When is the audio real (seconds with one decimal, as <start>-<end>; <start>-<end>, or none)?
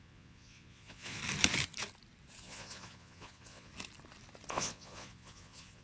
1.2-2.4; 3.7-4.5